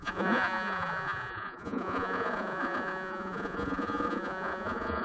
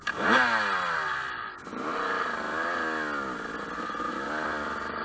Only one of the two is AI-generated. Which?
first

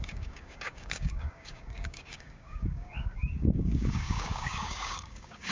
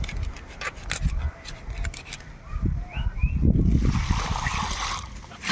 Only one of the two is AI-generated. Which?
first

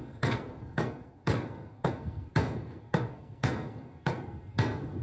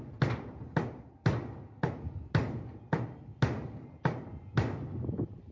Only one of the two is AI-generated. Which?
first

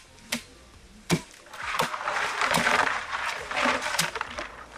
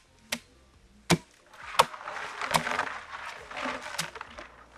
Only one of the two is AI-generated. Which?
first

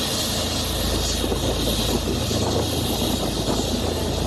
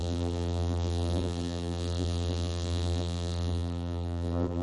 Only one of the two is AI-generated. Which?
second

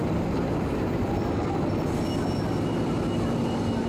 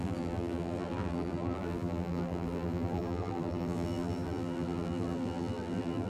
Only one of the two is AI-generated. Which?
second